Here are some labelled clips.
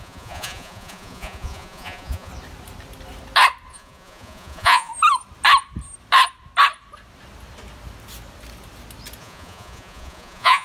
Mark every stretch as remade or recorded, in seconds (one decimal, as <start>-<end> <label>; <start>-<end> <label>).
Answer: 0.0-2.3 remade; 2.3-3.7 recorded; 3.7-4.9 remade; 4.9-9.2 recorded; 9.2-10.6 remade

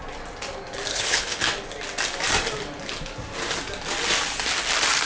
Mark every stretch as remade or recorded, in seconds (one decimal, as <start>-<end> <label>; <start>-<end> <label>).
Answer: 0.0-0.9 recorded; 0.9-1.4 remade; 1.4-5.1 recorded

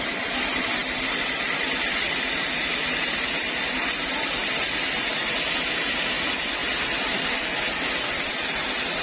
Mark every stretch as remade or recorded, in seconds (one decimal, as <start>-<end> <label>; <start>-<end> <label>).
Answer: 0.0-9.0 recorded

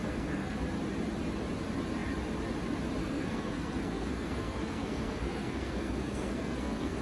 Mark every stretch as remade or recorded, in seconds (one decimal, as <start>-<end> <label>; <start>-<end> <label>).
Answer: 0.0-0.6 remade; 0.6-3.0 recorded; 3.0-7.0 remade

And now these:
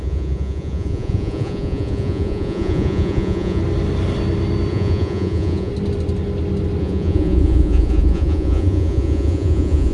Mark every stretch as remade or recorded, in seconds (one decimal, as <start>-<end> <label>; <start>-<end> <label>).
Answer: 0.0-3.6 remade; 3.6-4.7 recorded; 4.7-5.7 remade; 5.7-6.8 recorded; 6.8-9.9 remade

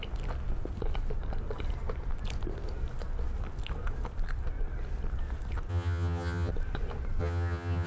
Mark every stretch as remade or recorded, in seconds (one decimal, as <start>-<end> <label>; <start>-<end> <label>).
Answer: 0.0-5.7 recorded; 5.7-6.5 remade; 6.5-7.2 recorded; 7.2-7.9 remade

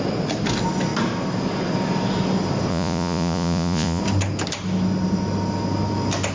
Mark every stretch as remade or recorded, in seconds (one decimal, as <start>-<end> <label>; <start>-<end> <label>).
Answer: 0.0-2.7 recorded; 2.7-4.0 remade; 4.0-6.3 recorded